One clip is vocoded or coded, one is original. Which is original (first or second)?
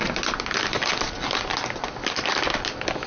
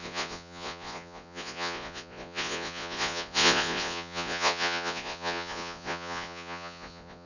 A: first